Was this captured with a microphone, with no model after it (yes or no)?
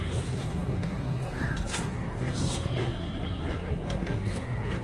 no